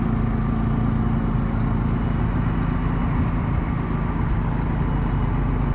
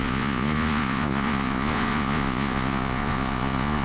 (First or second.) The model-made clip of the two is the second